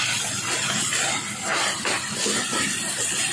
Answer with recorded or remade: recorded